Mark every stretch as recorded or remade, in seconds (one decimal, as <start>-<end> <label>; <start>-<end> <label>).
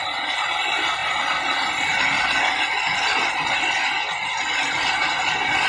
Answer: 0.0-5.7 recorded